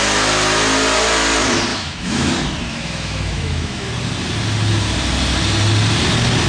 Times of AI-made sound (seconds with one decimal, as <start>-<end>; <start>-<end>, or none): 1.7-2.3; 2.7-3.9